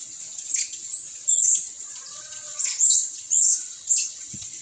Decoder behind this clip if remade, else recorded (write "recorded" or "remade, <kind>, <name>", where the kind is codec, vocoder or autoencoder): remade, vocoder, WaveNeXt